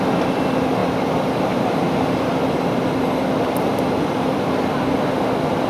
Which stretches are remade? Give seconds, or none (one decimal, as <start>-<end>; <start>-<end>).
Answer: none